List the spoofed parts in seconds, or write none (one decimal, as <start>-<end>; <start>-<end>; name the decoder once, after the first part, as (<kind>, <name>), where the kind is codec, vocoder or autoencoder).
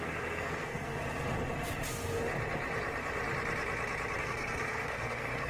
0.0-0.9 (codec, SNAC); 4.2-5.5